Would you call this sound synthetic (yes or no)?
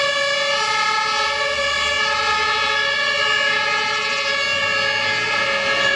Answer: no